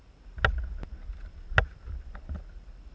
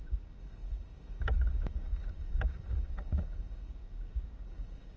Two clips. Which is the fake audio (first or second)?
second